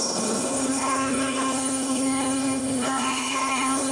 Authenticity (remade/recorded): remade